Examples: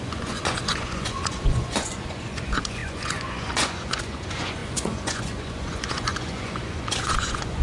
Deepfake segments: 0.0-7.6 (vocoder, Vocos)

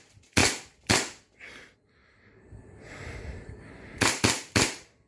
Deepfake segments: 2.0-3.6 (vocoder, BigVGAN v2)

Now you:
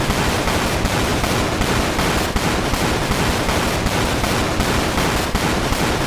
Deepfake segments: none